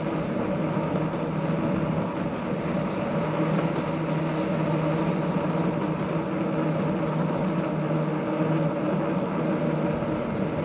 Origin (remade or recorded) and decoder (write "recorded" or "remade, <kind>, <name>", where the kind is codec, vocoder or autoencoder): recorded